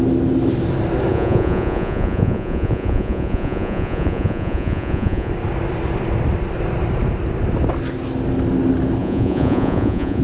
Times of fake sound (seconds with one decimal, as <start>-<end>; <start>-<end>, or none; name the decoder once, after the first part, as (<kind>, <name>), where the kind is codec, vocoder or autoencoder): 1.1-5.3 (vocoder, Vocos); 9.0-10.2